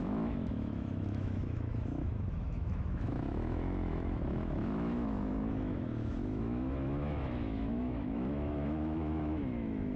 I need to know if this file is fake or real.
fake